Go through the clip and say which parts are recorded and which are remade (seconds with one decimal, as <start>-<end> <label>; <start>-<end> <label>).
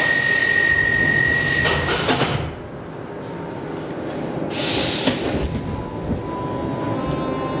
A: 0.0-7.6 recorded